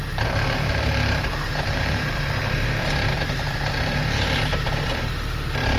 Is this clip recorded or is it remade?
remade